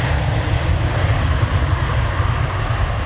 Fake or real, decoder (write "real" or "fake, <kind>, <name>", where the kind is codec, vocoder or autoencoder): real